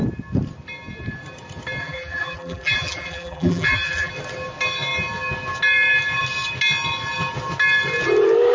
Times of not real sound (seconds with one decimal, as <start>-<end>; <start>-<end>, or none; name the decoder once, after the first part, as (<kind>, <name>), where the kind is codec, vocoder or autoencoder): 1.8-4.1 (vocoder, BigVGAN v2)